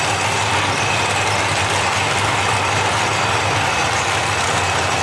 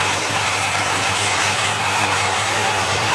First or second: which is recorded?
first